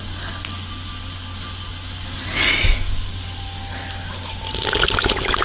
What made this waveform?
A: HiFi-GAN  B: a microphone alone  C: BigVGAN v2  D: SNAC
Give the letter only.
B